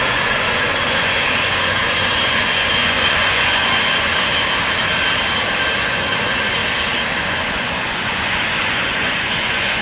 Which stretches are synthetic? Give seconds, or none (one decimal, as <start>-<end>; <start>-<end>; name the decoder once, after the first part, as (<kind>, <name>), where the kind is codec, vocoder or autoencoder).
0.0-4.1 (vocoder, Vocos); 5.7-6.6; 7.2-9.8